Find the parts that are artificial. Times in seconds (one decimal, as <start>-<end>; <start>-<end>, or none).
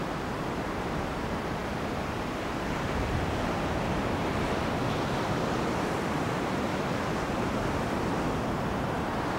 none